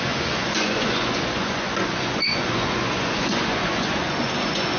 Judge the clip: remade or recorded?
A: remade